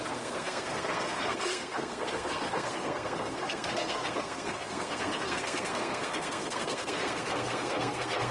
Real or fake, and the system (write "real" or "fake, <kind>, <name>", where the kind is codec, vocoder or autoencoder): fake, codec, SNAC